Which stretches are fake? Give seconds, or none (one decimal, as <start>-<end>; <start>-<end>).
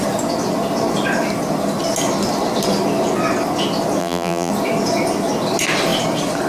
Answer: 4.0-4.5